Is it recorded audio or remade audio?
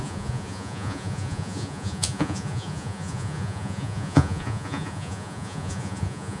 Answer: remade